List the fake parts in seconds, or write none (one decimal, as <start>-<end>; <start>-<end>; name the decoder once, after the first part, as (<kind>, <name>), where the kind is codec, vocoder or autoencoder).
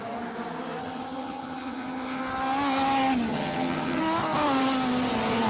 0.8-2.2 (vocoder, HiFi-GAN); 3.3-4.0